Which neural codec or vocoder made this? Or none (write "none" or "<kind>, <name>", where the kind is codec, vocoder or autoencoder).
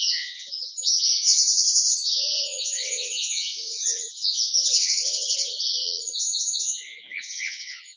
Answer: vocoder, Vocos